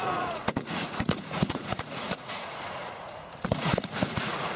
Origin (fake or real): fake